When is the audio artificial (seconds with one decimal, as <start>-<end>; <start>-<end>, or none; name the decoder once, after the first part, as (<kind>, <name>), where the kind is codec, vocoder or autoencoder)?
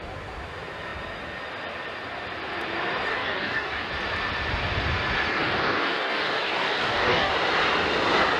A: 3.1-3.9 (codec, DAC); 5.3-7.3